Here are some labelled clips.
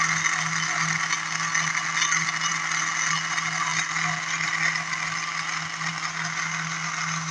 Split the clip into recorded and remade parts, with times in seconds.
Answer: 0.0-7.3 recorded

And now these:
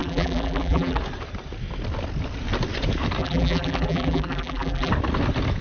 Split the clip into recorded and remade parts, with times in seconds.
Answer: 0.0-1.0 remade; 1.0-3.2 recorded; 3.2-4.9 remade; 4.9-5.6 recorded